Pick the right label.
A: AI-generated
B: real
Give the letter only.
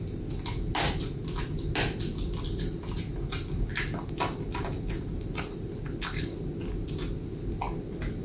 B